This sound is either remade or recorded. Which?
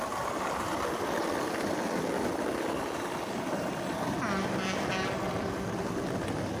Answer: recorded